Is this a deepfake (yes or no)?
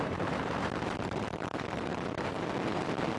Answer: yes